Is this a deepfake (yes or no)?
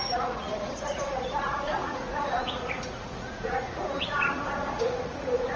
yes